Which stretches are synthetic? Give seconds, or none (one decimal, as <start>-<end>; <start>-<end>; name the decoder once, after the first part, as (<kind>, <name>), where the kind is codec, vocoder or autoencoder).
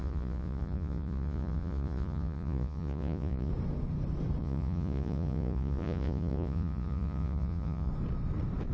0.0-3.5 (vocoder, Vocos); 4.4-7.9